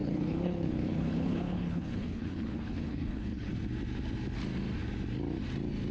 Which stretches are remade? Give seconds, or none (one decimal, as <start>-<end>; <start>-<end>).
0.0-3.5